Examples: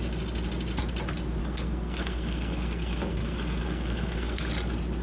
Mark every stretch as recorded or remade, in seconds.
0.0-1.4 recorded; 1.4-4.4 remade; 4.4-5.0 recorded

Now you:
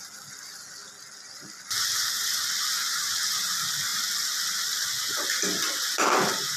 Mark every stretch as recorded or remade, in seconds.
0.0-6.6 recorded

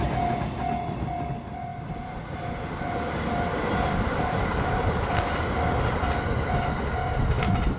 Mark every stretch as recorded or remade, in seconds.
0.0-7.8 recorded

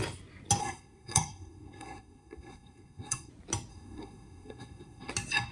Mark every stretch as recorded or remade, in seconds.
0.0-0.6 recorded; 0.6-3.3 remade; 3.3-3.7 recorded; 3.7-5.1 remade; 5.1-5.5 recorded

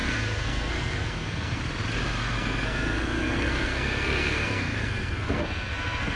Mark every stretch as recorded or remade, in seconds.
0.0-1.6 remade; 1.6-2.2 recorded; 2.2-6.2 remade

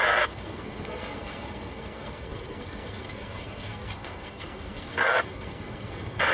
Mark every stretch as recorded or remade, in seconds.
0.0-6.3 remade

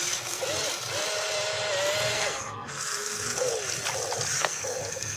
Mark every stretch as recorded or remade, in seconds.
0.0-0.4 remade; 0.4-2.1 recorded; 2.1-3.5 remade; 3.5-4.4 recorded; 4.4-5.2 remade